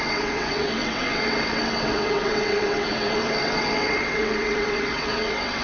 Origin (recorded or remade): remade